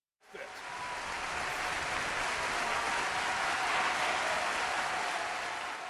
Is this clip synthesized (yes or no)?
no